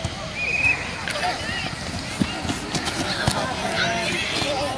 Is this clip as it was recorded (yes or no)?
yes